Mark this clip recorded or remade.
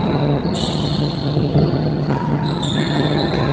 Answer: remade